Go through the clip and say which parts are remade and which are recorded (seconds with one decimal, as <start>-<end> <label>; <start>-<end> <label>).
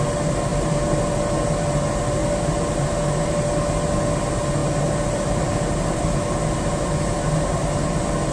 0.0-8.3 recorded